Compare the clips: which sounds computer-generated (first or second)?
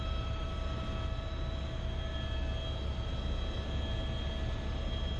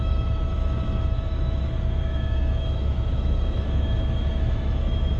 second